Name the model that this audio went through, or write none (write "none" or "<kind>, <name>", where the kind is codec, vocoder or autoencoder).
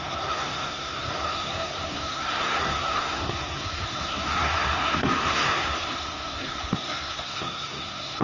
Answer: codec, SNAC